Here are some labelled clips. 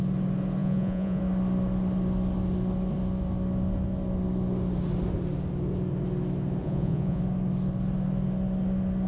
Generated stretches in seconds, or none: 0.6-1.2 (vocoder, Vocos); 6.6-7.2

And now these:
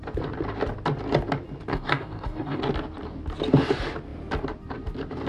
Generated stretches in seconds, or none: 1.7-2.6 (codec, DAC)

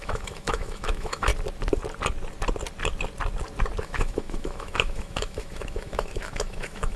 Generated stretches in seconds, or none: 0.0-1.3 (autoencoder, DAC-VAE); 3.8-7.0

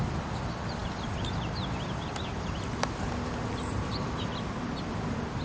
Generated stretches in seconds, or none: none